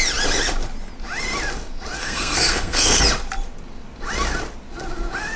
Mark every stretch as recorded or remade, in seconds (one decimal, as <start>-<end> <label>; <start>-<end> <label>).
0.0-2.0 recorded; 2.0-3.0 remade; 3.0-5.4 recorded